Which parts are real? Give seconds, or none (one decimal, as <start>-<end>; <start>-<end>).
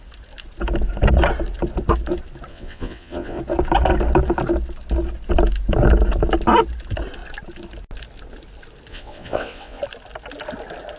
0.0-2.5; 3.4-8.9; 9.8-11.0